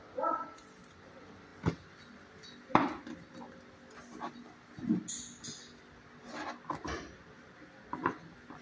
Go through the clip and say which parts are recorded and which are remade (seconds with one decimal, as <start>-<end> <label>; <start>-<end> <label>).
0.0-8.6 recorded